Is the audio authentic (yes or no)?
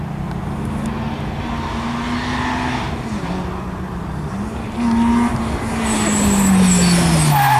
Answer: yes